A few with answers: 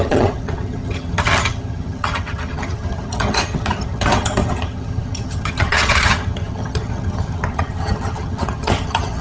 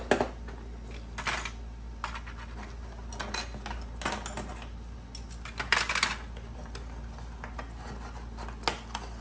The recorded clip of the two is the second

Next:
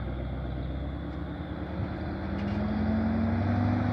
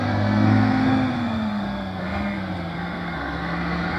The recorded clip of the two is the first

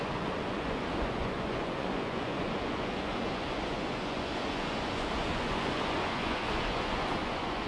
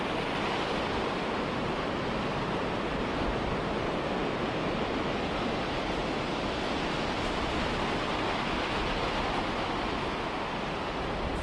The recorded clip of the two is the second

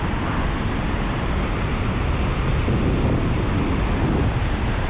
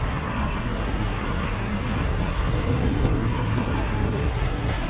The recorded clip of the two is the first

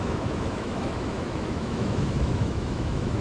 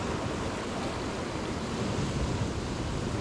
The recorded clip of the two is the second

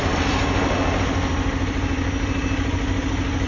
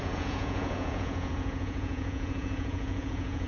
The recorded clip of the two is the first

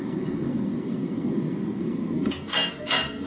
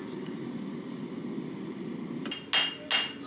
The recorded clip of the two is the second